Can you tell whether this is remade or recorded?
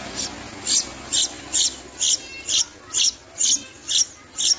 recorded